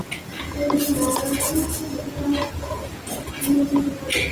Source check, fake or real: real